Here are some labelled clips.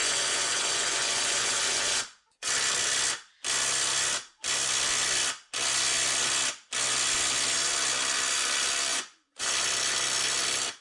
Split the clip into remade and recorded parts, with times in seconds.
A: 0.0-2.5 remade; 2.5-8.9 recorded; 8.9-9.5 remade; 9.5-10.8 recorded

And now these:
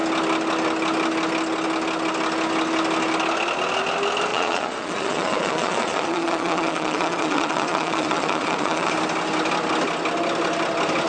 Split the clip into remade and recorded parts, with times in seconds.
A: 0.0-4.3 recorded; 4.3-8.9 remade; 8.9-11.1 recorded

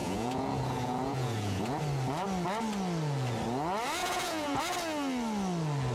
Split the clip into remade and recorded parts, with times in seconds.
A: 0.0-1.8 remade; 1.8-4.0 recorded; 4.0-4.6 remade; 4.6-5.9 recorded

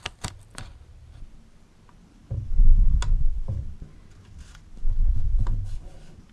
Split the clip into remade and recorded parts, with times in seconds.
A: 0.0-6.3 recorded

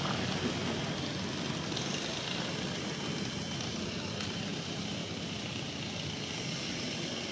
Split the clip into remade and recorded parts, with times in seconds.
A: 0.0-7.3 recorded

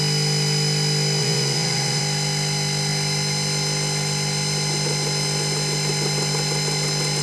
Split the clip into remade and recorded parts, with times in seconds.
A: 0.0-1.2 recorded; 1.2-2.0 remade; 2.0-7.2 recorded

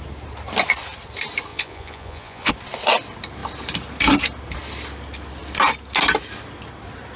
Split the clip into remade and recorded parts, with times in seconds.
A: 0.0-1.5 recorded; 1.5-2.5 remade; 2.5-7.2 recorded

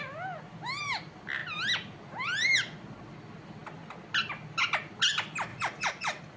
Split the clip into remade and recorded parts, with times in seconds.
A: 0.0-5.5 recorded; 5.5-6.4 remade